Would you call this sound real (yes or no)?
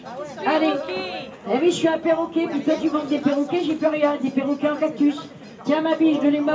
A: yes